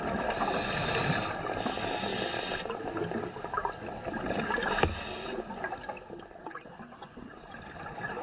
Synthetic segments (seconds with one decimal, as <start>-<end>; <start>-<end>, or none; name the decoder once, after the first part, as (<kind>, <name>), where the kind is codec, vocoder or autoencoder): 6.4-7.7 (vocoder, Vocos)